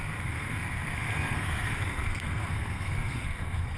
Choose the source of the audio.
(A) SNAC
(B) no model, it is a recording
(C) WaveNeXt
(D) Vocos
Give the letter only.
A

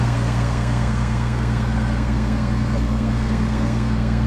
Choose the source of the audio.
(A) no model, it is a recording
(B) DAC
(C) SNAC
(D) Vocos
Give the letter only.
C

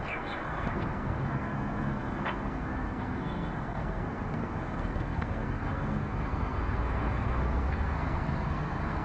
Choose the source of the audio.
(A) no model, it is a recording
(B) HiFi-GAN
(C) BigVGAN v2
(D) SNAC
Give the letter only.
D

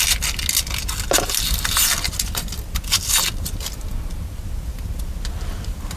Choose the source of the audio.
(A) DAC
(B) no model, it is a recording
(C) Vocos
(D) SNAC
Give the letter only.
B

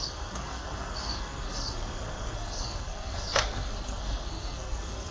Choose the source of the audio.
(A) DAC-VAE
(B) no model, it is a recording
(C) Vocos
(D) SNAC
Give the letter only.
D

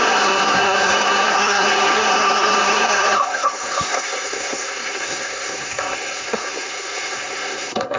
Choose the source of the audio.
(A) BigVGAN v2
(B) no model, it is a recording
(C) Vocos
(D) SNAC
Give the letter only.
D